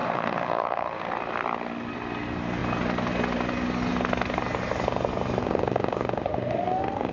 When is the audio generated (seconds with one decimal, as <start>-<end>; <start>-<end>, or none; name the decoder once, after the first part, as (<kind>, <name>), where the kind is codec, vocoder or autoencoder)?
0.0-1.0 (autoencoder, DAC-VAE); 5.4-7.1